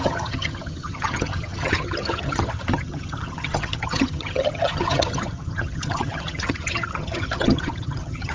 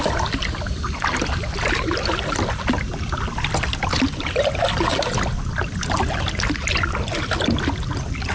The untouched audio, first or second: second